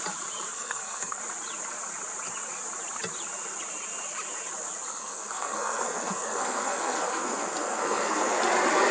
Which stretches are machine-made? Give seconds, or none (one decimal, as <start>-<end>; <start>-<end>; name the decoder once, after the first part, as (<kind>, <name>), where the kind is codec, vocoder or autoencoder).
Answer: 0.5-1.2 (codec, SNAC); 4.9-8.4